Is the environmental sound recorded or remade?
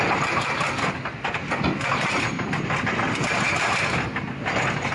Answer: recorded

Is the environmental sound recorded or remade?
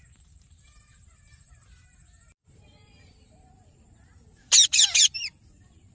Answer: remade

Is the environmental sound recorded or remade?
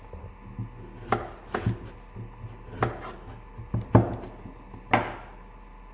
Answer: recorded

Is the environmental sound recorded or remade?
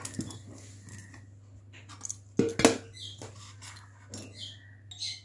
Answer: recorded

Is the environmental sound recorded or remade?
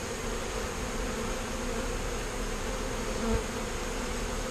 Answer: recorded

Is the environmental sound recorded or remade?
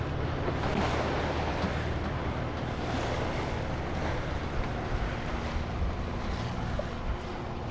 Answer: recorded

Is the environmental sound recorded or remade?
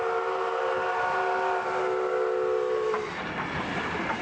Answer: recorded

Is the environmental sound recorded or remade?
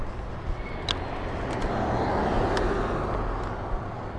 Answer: recorded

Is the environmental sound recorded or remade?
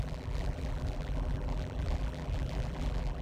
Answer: remade